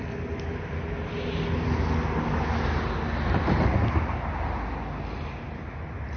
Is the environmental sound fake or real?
real